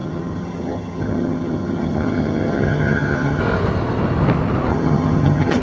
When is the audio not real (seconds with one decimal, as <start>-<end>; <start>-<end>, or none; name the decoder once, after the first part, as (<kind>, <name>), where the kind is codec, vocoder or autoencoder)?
0.0-3.4 (vocoder, HiFi-GAN); 4.7-5.6